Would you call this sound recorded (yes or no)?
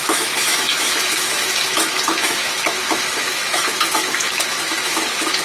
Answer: no